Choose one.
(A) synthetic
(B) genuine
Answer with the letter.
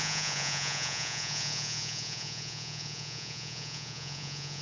A